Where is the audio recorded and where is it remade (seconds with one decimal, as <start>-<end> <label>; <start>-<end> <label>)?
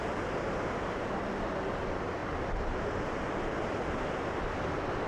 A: 0.0-5.1 recorded